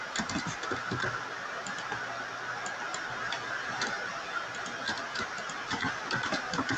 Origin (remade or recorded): recorded